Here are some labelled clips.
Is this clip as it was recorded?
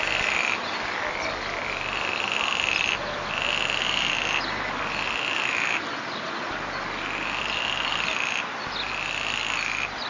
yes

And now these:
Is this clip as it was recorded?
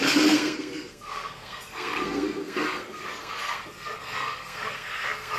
no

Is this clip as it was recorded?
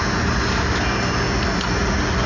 yes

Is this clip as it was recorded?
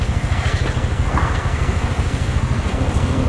no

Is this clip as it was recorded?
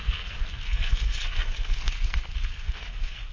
no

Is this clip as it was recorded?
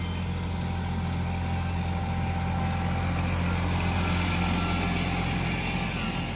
yes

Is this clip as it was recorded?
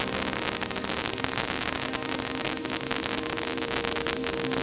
yes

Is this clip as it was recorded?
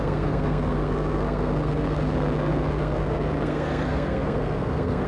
no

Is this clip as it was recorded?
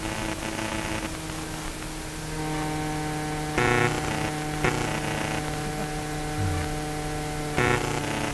yes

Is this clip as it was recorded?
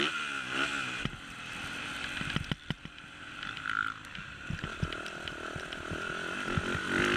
yes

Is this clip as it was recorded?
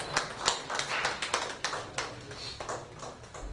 yes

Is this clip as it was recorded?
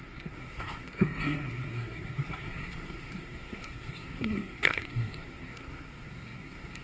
no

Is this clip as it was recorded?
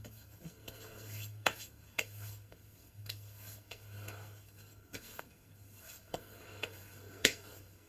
no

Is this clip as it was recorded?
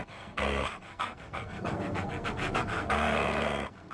no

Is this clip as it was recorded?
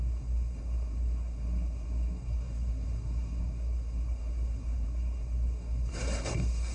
no